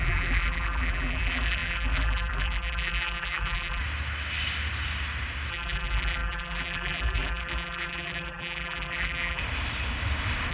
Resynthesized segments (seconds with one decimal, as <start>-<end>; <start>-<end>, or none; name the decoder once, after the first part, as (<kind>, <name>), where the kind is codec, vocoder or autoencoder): 0.0-3.8 (vocoder, BigVGAN v2); 5.5-9.4